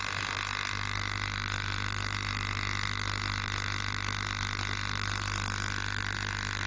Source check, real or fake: real